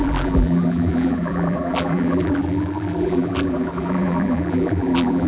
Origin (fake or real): fake